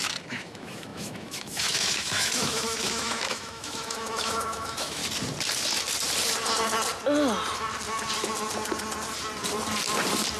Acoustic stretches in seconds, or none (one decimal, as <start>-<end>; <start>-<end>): 5.0-10.4